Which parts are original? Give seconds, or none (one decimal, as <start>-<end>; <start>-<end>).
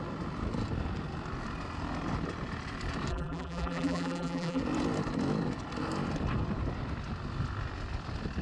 0.0-3.1; 4.6-8.4